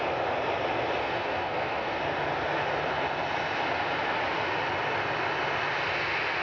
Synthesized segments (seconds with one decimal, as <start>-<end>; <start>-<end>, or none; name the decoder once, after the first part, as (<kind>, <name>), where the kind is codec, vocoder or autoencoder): 1.0-2.0 (codec, SNAC)